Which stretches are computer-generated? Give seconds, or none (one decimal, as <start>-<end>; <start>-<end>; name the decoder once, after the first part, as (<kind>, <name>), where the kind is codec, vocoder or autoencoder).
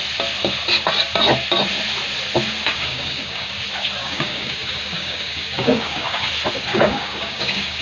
2.7-3.5 (codec, DAC); 4.0-6.3; 6.7-7.8